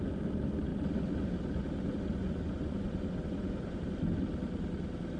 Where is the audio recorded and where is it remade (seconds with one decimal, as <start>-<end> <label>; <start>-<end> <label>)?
0.0-2.2 recorded; 2.2-3.8 remade; 3.8-5.2 recorded